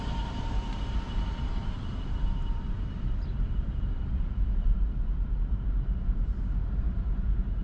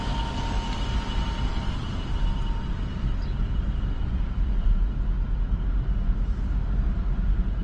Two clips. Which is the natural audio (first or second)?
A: second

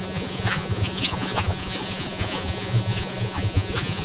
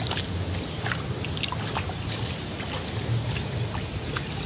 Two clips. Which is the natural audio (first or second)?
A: second